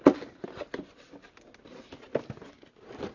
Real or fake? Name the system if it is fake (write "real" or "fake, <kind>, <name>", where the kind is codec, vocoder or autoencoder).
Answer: real